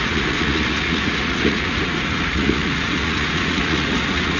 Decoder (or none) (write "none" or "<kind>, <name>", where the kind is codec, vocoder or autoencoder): vocoder, Vocos